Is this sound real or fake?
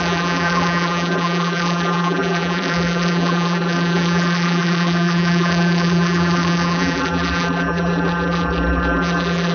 fake